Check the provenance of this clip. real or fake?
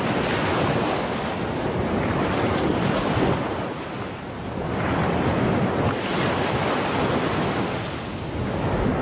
real